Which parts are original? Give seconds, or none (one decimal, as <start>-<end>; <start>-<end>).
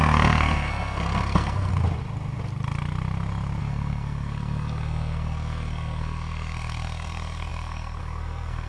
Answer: 1.7-3.6